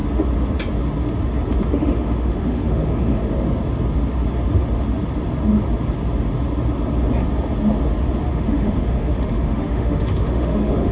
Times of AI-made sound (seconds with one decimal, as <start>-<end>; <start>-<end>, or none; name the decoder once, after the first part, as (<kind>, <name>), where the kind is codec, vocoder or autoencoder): 1.7-3.2 (autoencoder, DAC-VAE); 8.3-10.9